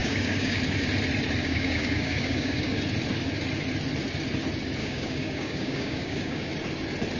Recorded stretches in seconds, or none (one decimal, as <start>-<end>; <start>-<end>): 0.6-1.4; 2.8-4.8; 6.5-7.2